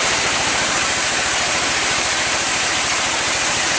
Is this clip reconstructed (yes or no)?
yes